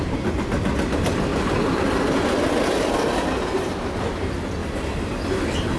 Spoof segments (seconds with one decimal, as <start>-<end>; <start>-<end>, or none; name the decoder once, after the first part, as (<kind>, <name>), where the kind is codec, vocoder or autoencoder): none